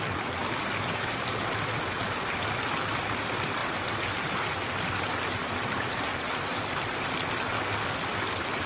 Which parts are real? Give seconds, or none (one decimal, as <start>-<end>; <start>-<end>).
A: 0.0-0.4; 1.6-2.0; 3.0-8.7